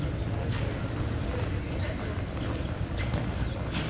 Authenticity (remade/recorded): recorded